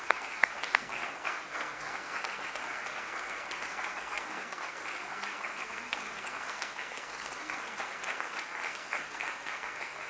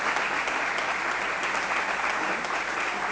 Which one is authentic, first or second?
second